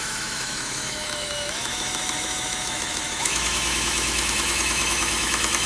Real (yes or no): no